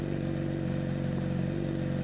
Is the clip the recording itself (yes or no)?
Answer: no